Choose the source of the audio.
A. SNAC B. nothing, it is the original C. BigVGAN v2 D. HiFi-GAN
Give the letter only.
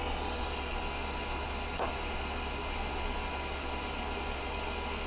B